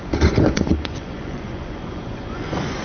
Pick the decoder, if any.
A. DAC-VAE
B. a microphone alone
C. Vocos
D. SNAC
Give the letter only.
C